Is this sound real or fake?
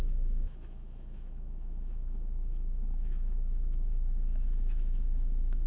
fake